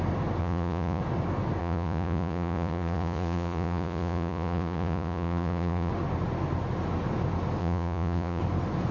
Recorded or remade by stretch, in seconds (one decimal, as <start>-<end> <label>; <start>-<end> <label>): 0.0-0.4 recorded; 0.4-1.0 remade; 1.0-1.6 recorded; 1.6-5.9 remade; 5.9-7.6 recorded; 7.6-8.4 remade; 8.4-8.9 recorded